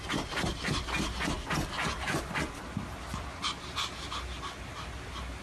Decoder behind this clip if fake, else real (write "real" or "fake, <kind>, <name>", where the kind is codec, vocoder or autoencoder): real